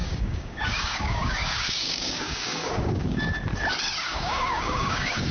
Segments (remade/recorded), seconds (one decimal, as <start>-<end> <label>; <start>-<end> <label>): 0.0-3.2 remade; 3.2-4.1 recorded; 4.1-5.3 remade